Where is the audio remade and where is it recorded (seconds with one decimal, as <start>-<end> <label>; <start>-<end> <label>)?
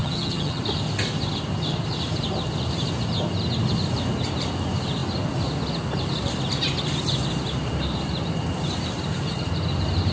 0.0-0.6 remade; 0.6-10.1 recorded